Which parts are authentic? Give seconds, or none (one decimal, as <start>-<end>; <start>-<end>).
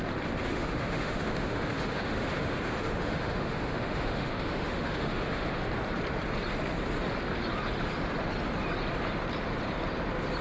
0.0-0.5; 5.6-10.4